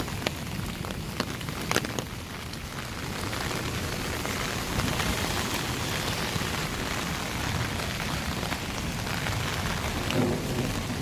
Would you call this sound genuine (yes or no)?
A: yes